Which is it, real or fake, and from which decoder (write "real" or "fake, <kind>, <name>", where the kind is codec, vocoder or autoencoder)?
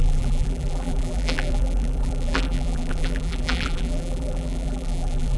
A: fake, vocoder, BigVGAN v2